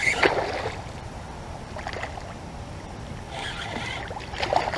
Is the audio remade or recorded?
remade